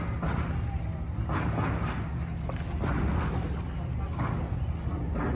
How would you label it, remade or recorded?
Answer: recorded